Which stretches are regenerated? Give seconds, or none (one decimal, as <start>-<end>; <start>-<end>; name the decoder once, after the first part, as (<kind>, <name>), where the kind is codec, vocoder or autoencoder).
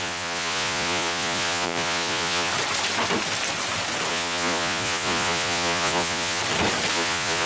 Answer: 0.0-2.5 (vocoder, Vocos); 4.1-6.4; 6.9-7.5